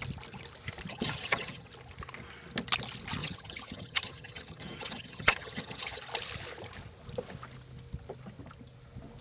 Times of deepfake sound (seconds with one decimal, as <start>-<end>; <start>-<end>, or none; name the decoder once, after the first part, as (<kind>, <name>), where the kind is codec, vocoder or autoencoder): 0.9-1.7 (vocoder, HiFi-GAN); 3.2-6.0